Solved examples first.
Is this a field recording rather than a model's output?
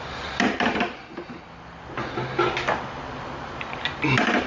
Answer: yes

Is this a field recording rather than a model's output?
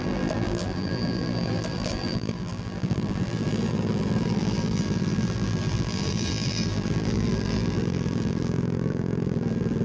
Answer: no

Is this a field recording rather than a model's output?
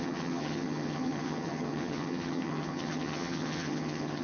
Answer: no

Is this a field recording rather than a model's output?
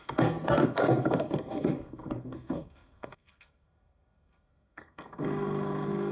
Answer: no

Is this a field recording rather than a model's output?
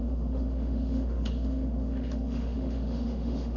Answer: no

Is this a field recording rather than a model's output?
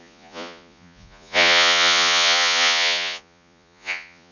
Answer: no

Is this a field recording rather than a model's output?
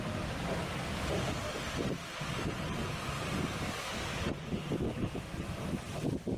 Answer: yes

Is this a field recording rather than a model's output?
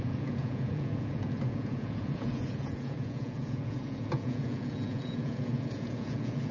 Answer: no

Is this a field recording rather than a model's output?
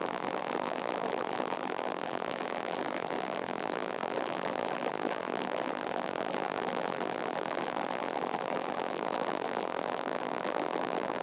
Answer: no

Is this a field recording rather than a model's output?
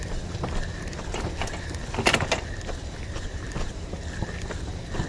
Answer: yes